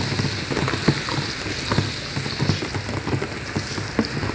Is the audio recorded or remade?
recorded